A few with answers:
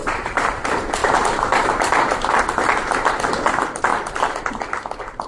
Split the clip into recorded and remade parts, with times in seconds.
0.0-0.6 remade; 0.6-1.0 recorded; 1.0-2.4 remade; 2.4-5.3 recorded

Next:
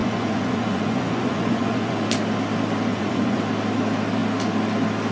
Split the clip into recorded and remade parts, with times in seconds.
0.0-2.1 remade; 2.1-2.9 recorded; 2.9-3.4 remade; 3.4-5.1 recorded

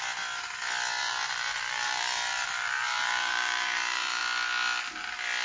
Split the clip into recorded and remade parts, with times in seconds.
0.0-1.0 recorded; 1.0-4.2 remade; 4.2-5.4 recorded

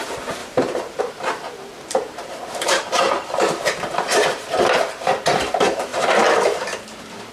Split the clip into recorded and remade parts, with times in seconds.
0.0-5.9 remade; 5.9-7.3 recorded

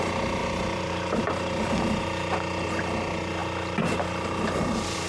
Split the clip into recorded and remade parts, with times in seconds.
0.0-0.4 recorded; 0.4-1.2 remade; 1.2-5.1 recorded